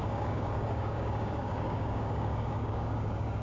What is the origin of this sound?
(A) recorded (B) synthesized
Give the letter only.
B